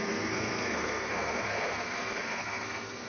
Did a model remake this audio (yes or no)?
yes